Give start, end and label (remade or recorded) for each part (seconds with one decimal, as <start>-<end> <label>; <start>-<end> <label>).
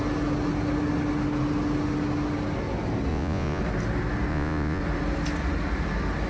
0.0-3.1 recorded; 3.1-3.6 remade; 3.6-4.3 recorded; 4.3-4.8 remade; 4.8-6.3 recorded